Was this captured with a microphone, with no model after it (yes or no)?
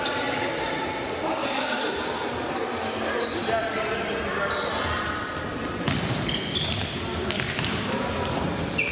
yes